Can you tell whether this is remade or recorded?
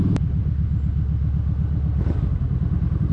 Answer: recorded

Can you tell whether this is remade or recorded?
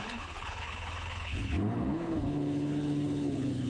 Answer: remade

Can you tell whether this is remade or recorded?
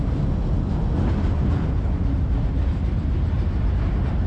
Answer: recorded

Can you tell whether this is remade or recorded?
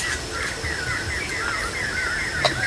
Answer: recorded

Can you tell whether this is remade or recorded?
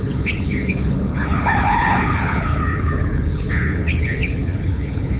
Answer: remade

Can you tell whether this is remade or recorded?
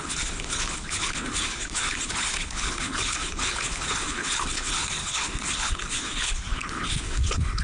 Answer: remade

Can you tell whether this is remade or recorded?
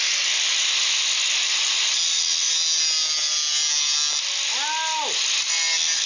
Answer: recorded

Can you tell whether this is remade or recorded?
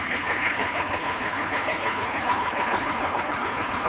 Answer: remade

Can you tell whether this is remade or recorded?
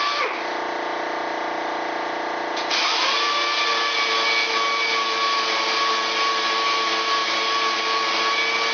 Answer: recorded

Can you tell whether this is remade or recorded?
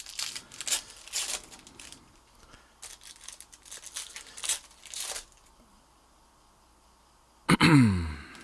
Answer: recorded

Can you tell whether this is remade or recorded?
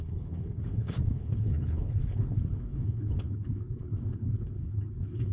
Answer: remade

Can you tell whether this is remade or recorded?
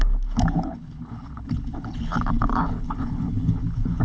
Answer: remade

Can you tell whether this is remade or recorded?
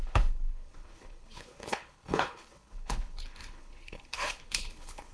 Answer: remade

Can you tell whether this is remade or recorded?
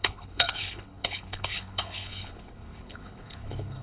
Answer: remade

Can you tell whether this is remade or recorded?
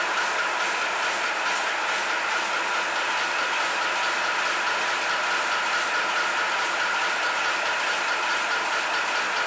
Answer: recorded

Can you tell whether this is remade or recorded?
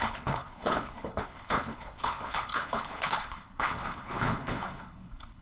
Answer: remade